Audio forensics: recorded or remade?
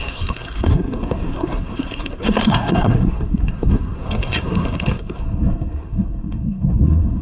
remade